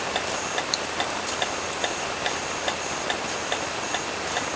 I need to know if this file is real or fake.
fake